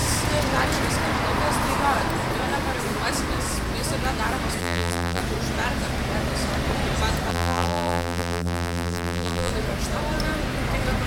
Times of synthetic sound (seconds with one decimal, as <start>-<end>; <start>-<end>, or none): 4.6-5.2; 7.3-9.5